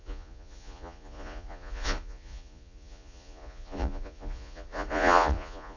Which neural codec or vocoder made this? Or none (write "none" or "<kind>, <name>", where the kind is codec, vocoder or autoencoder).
vocoder, Vocos